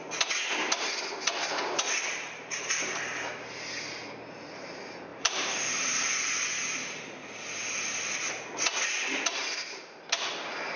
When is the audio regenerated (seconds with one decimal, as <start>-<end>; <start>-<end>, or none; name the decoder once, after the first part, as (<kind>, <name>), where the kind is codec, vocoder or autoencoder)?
1.4-3.7 (vocoder, BigVGAN v2); 5.1-6.1